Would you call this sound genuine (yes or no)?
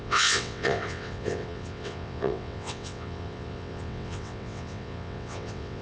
no